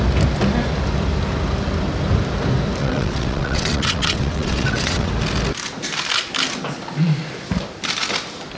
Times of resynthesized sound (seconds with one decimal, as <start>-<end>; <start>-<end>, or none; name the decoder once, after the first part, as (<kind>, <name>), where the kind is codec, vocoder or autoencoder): 2.8-5.1 (vocoder, WaveNeXt)